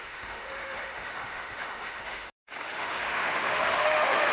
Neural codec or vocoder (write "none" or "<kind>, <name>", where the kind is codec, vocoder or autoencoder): autoencoder, DAC-VAE